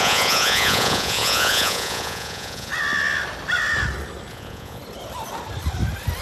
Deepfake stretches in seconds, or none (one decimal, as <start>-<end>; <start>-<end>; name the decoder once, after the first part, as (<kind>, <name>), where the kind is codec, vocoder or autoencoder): 0.0-2.7 (vocoder, Vocos); 4.3-4.8